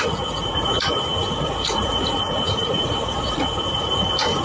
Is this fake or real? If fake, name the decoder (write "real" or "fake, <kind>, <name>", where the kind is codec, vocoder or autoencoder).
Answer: fake, vocoder, Vocos